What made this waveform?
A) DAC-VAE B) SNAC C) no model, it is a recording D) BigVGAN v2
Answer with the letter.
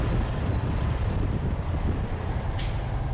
D